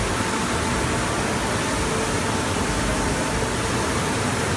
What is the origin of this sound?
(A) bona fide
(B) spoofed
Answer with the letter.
A